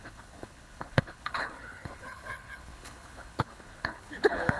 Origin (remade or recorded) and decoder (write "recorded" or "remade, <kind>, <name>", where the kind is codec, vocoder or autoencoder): remade, codec, HILCodec